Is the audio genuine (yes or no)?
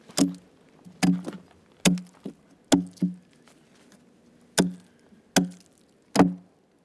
yes